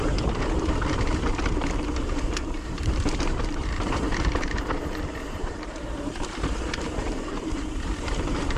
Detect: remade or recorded remade